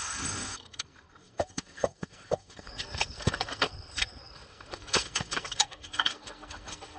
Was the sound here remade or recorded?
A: remade